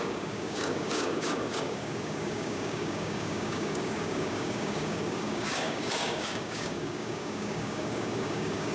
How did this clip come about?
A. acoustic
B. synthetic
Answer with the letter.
B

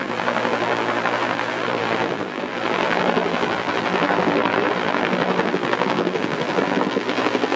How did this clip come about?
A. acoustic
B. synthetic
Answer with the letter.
B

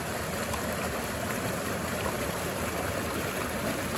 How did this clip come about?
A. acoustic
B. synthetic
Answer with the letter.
A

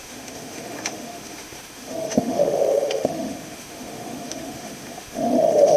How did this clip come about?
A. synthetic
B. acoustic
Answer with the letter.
A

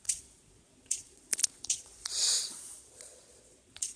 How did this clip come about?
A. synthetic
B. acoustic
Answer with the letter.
A